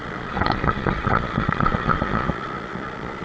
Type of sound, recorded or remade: remade